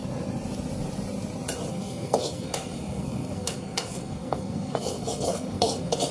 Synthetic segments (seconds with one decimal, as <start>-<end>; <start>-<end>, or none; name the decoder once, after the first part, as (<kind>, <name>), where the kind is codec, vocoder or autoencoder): 1.7-6.1 (codec, SNAC)